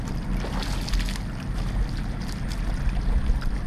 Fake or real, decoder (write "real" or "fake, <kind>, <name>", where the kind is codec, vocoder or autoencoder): real